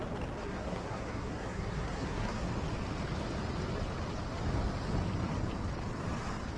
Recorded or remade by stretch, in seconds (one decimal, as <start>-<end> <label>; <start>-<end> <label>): 0.0-0.4 recorded; 0.4-2.5 remade; 2.5-6.6 recorded